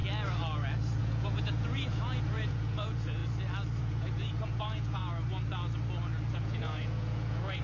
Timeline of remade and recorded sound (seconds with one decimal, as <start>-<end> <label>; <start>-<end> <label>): 0.0-1.0 recorded; 1.0-3.2 remade; 3.2-3.8 recorded; 3.8-5.0 remade; 5.0-6.3 recorded; 6.3-7.6 remade